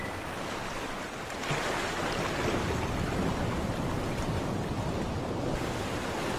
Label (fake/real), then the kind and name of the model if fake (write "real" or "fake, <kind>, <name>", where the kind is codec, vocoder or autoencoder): real